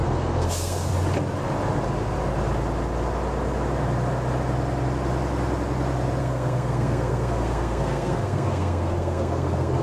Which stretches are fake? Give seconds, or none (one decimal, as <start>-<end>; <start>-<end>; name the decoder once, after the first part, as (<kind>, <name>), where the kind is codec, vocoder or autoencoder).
0.0-0.9 (codec, SNAC); 6.2-9.8